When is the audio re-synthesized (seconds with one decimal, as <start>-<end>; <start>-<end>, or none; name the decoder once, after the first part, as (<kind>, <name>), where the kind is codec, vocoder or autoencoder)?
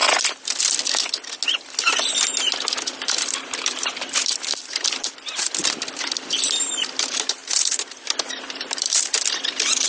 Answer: 1.9-9.9 (vocoder, BigVGAN v2)